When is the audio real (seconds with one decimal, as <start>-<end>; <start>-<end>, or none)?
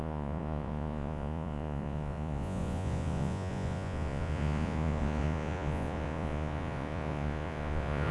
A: none